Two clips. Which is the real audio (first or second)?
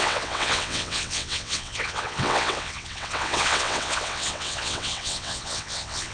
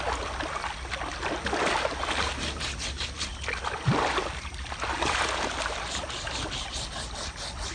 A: second